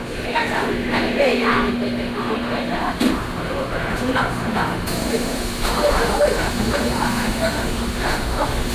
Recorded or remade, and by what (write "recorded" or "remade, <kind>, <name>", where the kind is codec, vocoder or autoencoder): remade, autoencoder, DAC-VAE